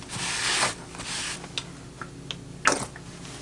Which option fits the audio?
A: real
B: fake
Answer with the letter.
A